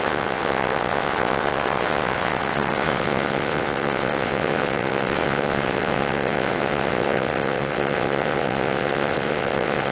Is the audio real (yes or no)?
no